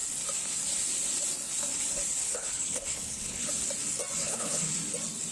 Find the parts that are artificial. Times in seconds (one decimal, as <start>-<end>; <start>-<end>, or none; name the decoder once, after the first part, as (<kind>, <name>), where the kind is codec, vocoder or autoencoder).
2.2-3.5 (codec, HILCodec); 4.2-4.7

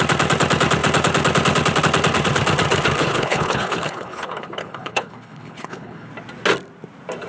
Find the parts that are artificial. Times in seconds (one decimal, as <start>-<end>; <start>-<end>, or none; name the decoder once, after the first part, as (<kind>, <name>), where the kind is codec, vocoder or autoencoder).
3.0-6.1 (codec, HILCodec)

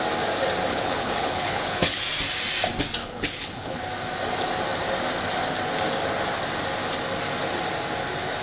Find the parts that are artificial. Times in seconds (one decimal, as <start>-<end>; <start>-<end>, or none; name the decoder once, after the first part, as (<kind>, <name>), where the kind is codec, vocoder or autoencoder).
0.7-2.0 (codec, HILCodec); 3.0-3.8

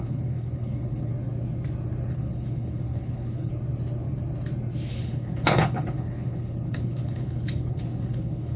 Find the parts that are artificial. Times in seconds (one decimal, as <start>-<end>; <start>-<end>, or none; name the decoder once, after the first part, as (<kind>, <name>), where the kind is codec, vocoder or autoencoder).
0.0-1.1 (codec, HILCodec); 2.1-3.5; 4.9-8.6